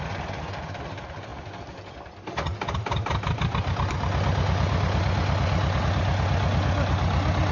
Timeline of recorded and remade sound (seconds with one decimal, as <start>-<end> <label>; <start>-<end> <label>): 0.0-7.5 recorded